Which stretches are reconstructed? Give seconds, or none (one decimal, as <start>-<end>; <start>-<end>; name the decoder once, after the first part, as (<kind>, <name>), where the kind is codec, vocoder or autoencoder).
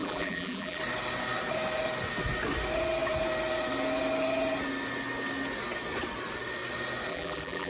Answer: 0.0-0.8 (vocoder, BigVGAN v2); 7.1-7.7